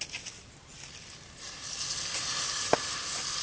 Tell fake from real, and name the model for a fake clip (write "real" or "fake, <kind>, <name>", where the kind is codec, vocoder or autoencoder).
real